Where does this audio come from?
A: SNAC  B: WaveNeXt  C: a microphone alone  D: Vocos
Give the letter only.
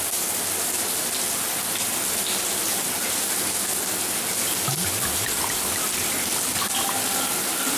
C